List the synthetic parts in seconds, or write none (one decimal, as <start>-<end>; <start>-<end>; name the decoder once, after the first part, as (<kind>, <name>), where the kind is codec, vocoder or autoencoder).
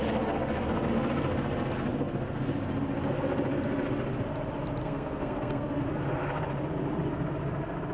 4.8-5.8 (codec, SNAC)